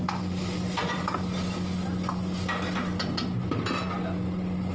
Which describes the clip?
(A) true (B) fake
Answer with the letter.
A